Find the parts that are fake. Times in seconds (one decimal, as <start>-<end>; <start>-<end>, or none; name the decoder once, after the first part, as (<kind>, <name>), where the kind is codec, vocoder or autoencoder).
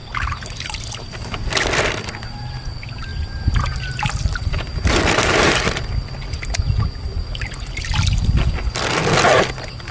0.0-0.8 (vocoder, BigVGAN v2); 3.1-4.9